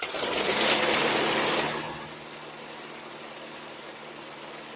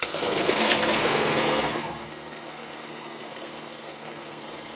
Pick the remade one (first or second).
second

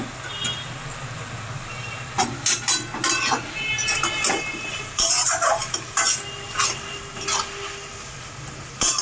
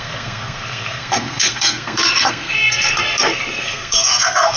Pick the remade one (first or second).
second